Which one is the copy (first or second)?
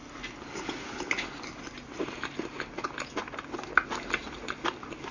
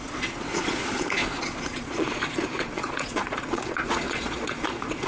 second